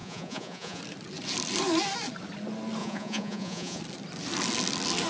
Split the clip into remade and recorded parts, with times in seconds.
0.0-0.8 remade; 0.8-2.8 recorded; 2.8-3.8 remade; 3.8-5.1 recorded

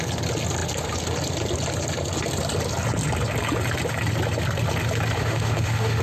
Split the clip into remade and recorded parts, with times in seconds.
0.0-5.2 recorded; 5.2-6.0 remade

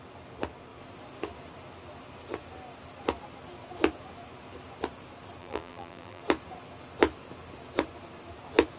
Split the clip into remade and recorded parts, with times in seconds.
0.0-5.4 recorded; 5.4-6.2 remade; 6.2-8.8 recorded